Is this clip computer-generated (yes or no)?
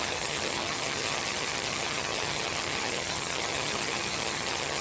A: yes